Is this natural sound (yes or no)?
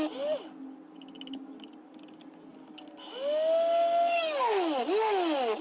yes